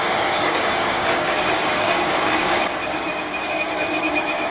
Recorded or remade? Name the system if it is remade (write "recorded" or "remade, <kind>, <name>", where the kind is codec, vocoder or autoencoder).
remade, codec, DAC